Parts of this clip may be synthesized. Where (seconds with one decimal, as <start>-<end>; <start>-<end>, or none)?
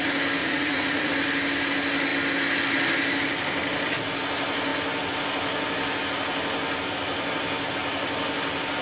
0.4-1.1